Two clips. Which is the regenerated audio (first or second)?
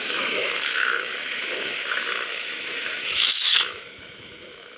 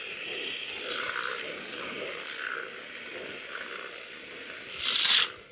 first